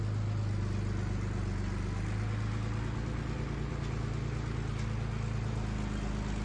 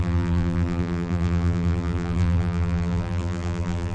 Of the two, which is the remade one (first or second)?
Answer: second